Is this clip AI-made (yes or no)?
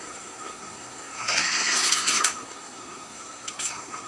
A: yes